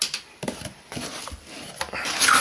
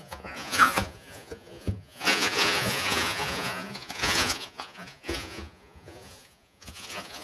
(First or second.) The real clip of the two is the first